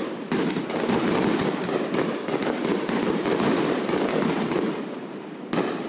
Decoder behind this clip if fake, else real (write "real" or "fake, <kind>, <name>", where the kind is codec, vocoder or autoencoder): fake, vocoder, BigVGAN v2